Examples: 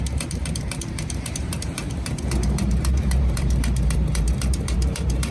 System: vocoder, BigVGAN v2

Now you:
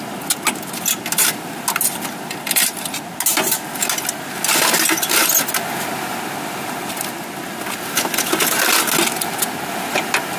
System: none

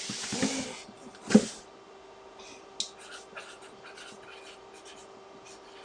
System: none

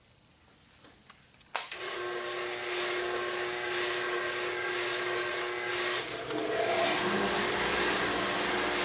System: none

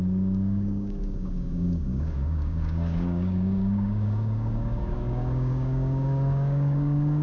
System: codec, DAC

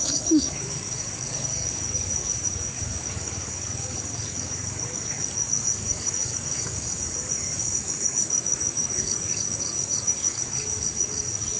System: codec, DAC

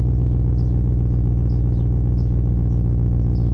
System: none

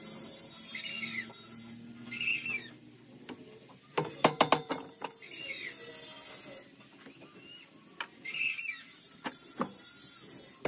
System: none